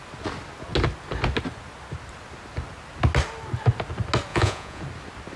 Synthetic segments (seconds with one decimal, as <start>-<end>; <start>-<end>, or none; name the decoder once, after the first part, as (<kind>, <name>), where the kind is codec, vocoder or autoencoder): 4.3-4.8 (vocoder, Vocos)